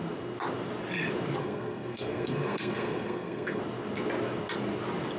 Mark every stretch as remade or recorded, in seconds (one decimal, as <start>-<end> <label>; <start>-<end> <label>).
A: 0.0-1.4 recorded; 1.4-3.6 remade; 3.6-5.2 recorded